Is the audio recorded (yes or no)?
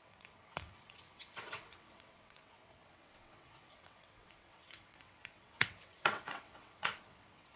no